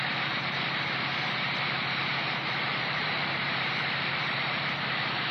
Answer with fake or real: fake